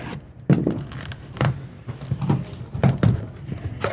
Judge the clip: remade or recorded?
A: recorded